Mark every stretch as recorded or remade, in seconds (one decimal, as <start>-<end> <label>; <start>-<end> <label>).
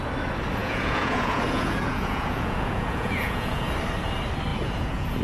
0.0-0.6 recorded; 0.6-3.7 remade; 3.7-4.5 recorded; 4.5-5.2 remade